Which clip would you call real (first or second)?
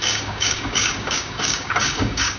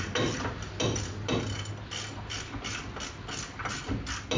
second